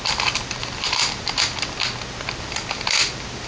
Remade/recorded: recorded